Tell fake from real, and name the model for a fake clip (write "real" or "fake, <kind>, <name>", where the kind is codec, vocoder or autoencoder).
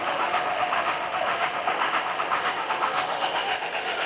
fake, autoencoder, DAC-VAE